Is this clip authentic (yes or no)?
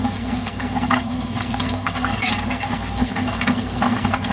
no